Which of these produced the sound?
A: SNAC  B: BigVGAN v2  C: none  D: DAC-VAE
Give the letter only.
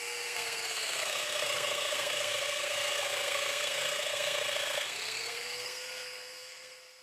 A